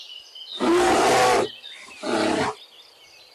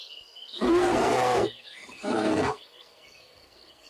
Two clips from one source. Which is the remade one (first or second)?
second